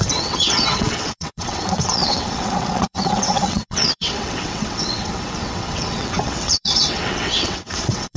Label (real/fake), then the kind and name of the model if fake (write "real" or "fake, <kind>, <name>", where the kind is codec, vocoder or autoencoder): fake, vocoder, WaveNeXt